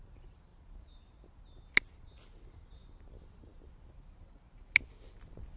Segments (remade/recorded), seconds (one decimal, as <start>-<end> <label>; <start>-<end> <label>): 0.0-5.6 recorded